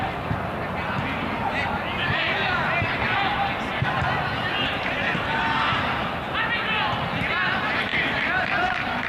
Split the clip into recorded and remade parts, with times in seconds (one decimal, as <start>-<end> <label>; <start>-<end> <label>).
0.0-9.1 recorded